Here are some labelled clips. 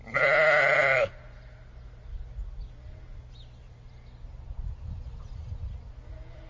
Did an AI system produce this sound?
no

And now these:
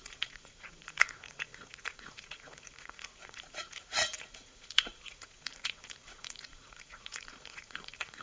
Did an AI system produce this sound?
yes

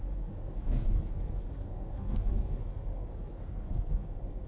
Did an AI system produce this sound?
yes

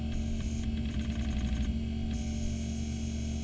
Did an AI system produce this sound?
no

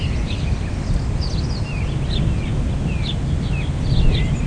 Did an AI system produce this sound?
no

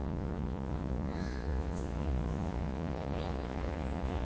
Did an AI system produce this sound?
yes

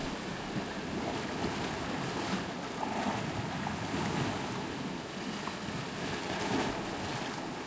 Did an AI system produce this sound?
no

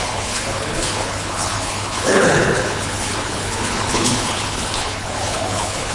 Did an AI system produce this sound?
yes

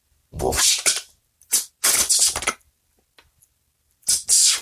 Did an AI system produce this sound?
no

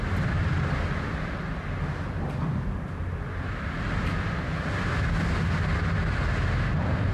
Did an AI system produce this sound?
no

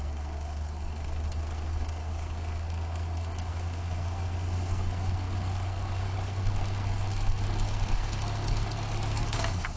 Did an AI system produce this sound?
yes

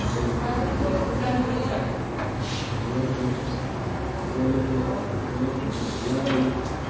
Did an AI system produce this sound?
no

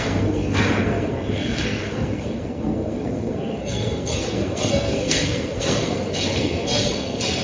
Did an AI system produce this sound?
yes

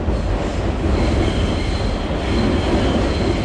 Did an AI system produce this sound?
no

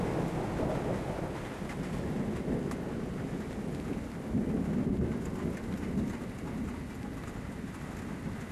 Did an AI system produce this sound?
no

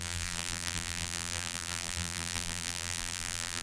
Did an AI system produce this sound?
yes